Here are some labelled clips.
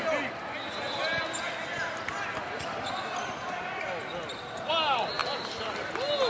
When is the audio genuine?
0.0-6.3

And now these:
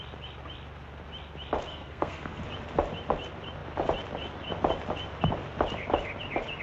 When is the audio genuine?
0.0-1.7; 2.4-6.6